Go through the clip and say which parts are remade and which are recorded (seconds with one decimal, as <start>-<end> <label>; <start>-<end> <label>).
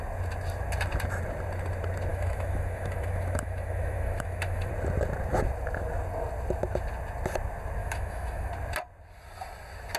0.0-2.1 recorded; 2.1-4.7 remade; 4.7-7.8 recorded; 7.8-8.5 remade; 8.5-10.0 recorded